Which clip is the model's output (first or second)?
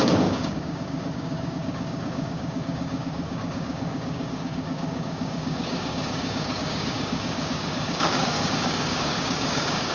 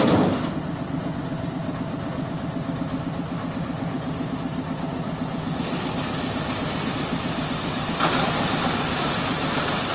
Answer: first